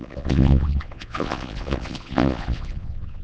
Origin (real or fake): fake